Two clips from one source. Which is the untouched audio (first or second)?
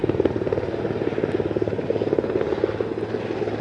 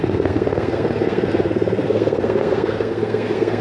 first